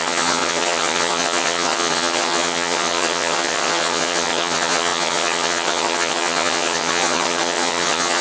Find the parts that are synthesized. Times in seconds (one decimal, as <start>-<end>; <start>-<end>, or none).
0.0-8.2